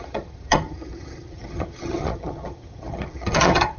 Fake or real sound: fake